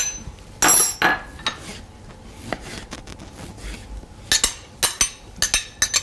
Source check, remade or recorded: recorded